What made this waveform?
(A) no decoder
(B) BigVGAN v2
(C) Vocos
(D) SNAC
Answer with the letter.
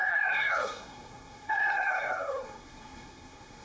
D